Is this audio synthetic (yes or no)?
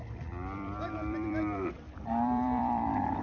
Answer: yes